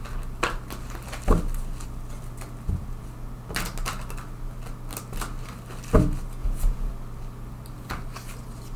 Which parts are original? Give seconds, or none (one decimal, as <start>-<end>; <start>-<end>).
0.0-6.4; 6.9-8.8